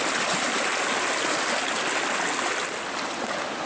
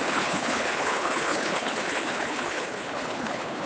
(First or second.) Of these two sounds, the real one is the first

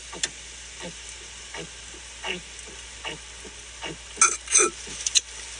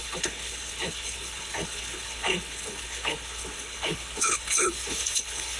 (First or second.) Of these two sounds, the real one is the first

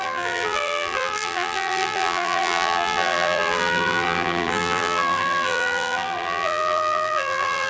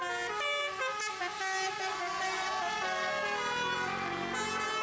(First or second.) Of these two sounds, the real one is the second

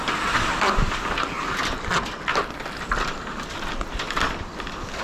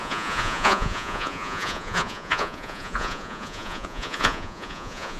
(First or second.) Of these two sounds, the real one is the first